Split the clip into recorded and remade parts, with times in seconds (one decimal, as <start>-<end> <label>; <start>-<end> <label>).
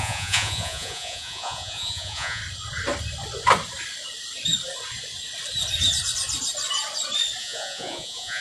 0.0-2.4 remade; 2.4-7.4 recorded; 7.4-8.4 remade